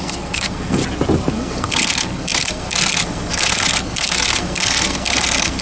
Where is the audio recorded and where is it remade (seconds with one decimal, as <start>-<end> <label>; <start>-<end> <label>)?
0.0-0.8 remade; 0.8-1.3 recorded; 1.3-5.6 remade